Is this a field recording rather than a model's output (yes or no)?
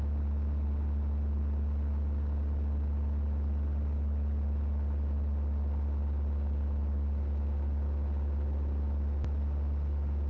yes